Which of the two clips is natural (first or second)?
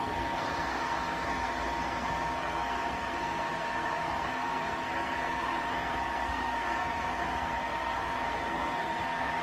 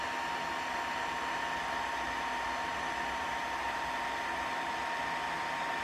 second